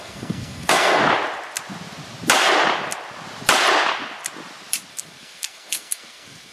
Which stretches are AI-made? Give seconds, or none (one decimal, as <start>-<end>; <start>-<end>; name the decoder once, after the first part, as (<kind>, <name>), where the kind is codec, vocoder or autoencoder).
0.0-1.0 (codec, SNAC); 4.9-6.5